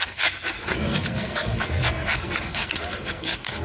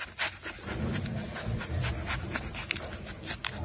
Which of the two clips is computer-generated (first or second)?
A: first